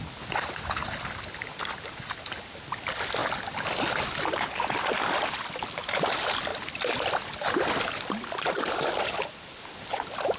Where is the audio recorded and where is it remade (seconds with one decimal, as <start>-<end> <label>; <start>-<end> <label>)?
0.0-6.5 recorded; 6.5-9.5 remade; 9.5-10.4 recorded